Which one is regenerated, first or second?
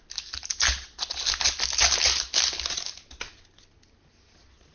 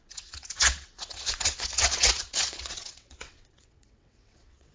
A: second